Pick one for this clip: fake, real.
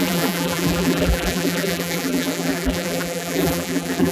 fake